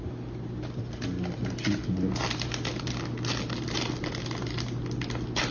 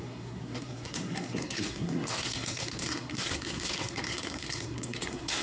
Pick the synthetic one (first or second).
second